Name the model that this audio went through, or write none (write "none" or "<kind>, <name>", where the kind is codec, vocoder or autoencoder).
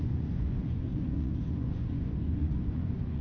vocoder, Vocos